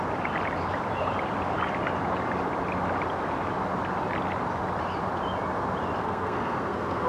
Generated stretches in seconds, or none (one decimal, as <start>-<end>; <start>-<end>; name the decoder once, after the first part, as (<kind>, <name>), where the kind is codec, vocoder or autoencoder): 6.0-7.1 (codec, SNAC)